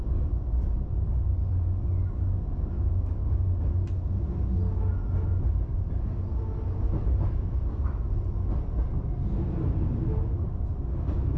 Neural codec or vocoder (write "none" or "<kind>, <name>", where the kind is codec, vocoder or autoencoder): none